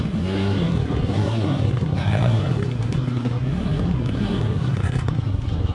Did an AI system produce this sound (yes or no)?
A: yes